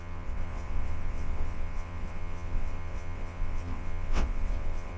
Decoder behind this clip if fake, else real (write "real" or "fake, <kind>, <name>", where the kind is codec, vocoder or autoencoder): fake, vocoder, WaveNeXt